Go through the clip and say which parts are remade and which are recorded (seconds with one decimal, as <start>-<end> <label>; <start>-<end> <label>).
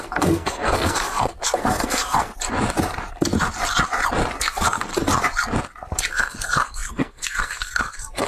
0.0-2.3 remade; 2.3-4.4 recorded; 4.4-4.9 remade; 4.9-6.1 recorded; 6.1-8.3 remade